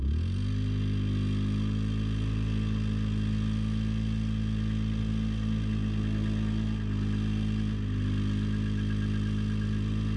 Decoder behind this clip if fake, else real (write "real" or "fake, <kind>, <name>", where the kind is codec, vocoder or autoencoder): real